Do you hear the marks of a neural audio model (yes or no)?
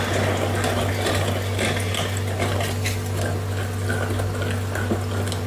no